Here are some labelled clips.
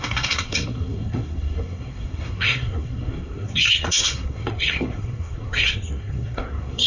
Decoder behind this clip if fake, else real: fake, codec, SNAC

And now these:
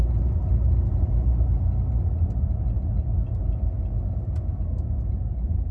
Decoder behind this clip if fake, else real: real